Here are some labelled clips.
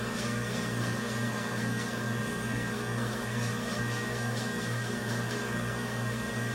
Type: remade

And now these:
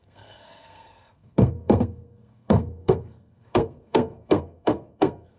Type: remade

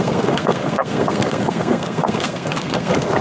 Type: remade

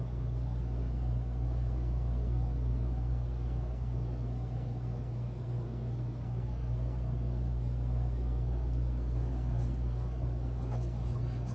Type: remade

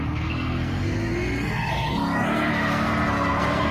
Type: remade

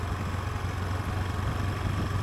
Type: recorded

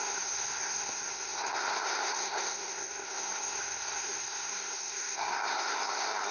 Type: remade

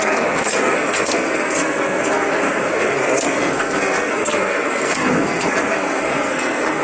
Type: remade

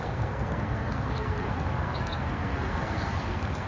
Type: remade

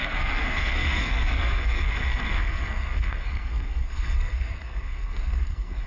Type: remade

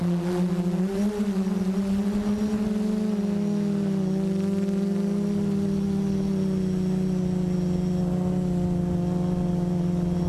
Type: recorded